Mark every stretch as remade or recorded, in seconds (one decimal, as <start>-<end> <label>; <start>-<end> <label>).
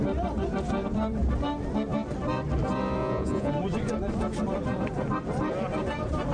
0.0-3.0 recorded; 3.0-3.5 remade; 3.5-6.3 recorded